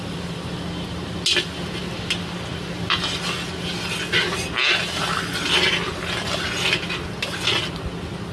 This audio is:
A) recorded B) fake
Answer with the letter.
A